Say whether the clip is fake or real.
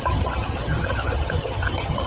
fake